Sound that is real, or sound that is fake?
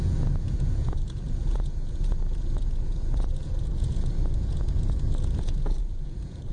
fake